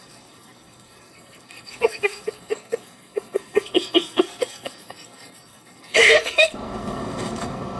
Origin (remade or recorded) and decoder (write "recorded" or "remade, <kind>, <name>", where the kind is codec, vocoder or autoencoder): remade, codec, SNAC